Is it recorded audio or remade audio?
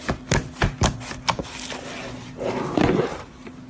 recorded